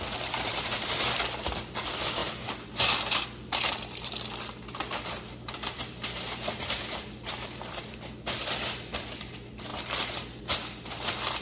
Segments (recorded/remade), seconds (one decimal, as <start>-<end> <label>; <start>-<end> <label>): 0.0-2.2 remade; 2.2-3.7 recorded; 3.7-9.7 remade; 9.7-10.4 recorded; 10.4-11.4 remade